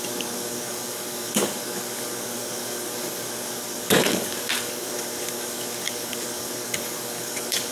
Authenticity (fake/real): fake